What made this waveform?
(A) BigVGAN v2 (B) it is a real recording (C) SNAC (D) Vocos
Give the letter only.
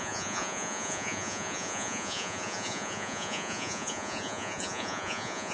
D